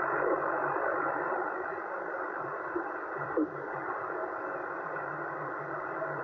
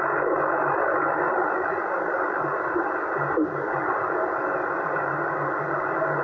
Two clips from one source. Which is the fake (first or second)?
first